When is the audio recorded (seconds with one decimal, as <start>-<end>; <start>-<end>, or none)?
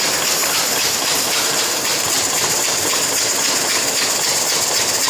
0.0-0.4; 2.9-5.1